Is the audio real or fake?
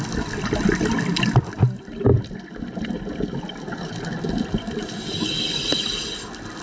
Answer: real